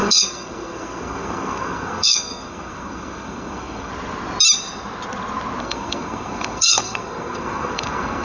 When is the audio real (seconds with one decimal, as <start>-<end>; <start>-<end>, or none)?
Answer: 3.9-5.6